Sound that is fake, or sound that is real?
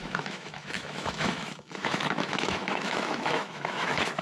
fake